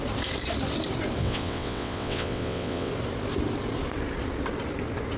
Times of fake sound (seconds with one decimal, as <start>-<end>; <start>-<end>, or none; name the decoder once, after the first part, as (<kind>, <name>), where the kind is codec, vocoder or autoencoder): 1.2-2.9 (vocoder, WaveNeXt)